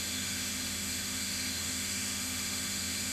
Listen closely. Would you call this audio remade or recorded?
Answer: remade